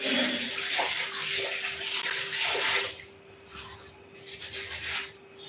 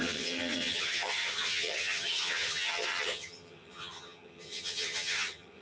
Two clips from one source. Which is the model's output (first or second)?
second